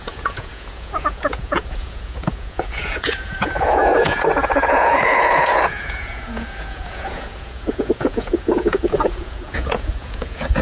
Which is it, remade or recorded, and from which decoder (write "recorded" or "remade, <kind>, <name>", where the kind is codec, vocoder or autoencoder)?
remade, vocoder, Vocos